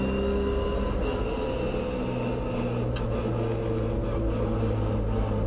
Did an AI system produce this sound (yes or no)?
no